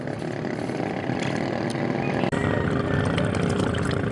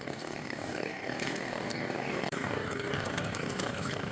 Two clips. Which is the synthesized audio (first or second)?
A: second